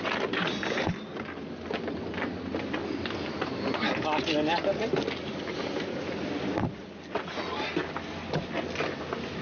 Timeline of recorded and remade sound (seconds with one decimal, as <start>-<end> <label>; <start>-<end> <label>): 0.0-9.4 recorded